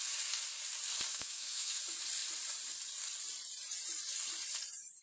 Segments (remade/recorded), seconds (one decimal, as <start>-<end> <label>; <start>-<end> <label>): 0.0-1.1 recorded; 1.1-1.8 remade; 1.8-5.0 recorded